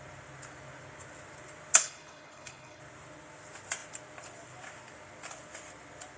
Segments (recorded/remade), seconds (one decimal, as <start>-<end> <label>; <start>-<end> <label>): 0.0-1.8 recorded; 1.8-2.8 remade; 2.8-6.2 recorded